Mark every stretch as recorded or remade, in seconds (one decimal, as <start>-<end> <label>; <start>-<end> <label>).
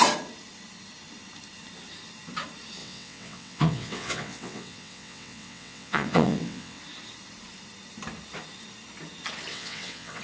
0.0-2.8 recorded; 2.8-6.8 remade; 6.8-9.5 recorded; 9.5-10.2 remade